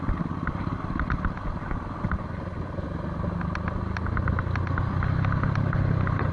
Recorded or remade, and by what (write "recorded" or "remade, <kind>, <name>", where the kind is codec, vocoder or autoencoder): recorded